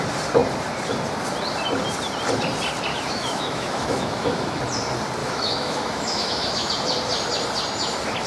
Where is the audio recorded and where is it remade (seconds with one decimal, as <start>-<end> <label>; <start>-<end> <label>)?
0.0-2.9 recorded; 2.9-4.6 remade; 4.6-5.2 recorded; 5.2-6.7 remade; 6.7-8.3 recorded